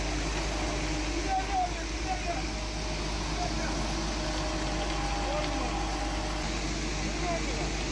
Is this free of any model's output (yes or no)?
yes